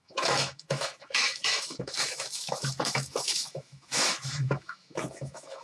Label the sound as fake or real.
fake